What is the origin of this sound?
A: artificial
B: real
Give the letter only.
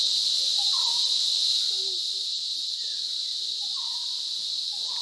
B